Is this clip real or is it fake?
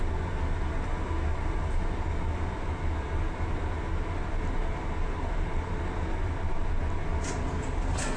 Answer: real